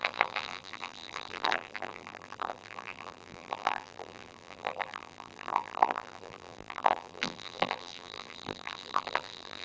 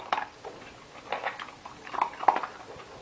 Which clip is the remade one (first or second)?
first